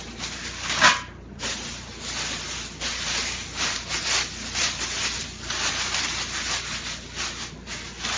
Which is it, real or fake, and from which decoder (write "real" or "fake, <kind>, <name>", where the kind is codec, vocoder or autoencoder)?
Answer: real